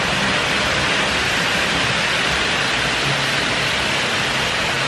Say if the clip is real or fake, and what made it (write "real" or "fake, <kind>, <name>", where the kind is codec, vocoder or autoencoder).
real